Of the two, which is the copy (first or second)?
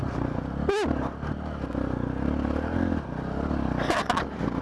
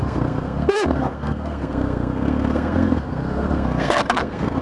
second